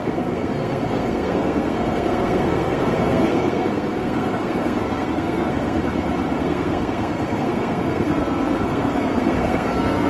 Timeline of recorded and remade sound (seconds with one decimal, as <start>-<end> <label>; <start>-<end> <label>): 0.0-5.8 remade; 5.8-6.4 recorded; 6.4-10.1 remade